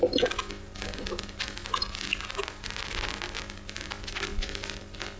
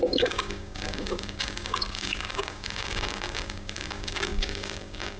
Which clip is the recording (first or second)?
first